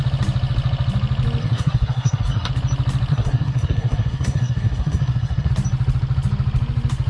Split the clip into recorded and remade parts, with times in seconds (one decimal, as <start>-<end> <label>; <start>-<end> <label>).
0.0-1.4 recorded; 1.4-2.5 remade; 2.5-3.1 recorded; 3.1-5.5 remade; 5.5-7.1 recorded